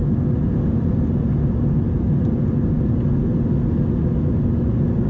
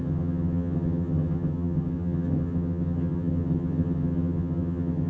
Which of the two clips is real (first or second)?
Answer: first